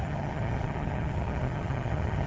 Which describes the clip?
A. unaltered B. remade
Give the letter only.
B